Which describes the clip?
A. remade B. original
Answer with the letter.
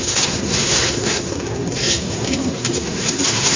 A